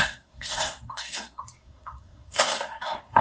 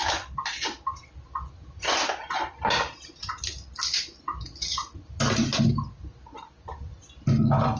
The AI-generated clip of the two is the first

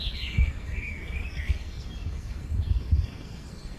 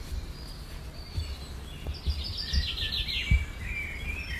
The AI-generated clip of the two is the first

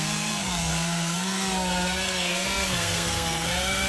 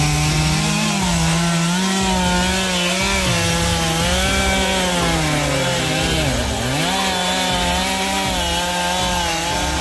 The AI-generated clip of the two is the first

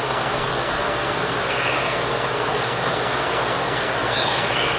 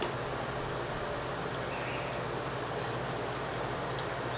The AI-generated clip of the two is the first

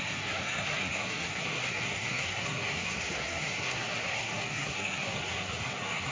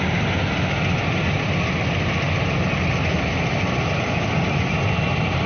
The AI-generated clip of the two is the first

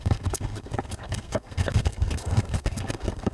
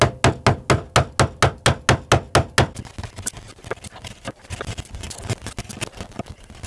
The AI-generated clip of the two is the first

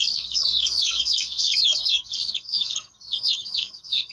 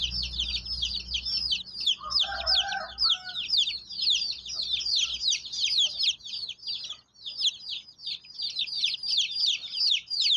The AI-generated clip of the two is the first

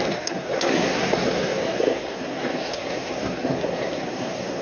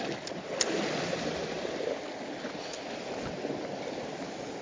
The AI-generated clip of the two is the first